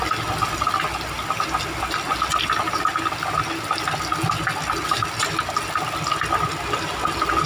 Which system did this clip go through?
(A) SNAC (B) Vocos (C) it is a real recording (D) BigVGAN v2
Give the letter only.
C